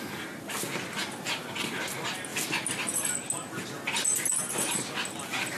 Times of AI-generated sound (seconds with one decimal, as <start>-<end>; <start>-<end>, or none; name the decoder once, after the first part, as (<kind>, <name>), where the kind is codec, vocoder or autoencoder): none